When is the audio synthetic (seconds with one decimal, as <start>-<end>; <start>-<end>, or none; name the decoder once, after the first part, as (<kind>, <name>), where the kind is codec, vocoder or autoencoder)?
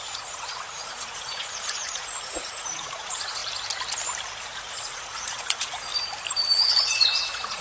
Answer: 0.0-3.4 (vocoder, Vocos); 4.4-5.9; 6.7-7.6